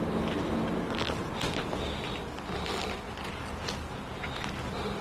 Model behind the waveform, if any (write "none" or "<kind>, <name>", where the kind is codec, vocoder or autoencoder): none